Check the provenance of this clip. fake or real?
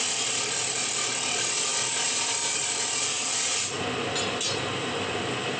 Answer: real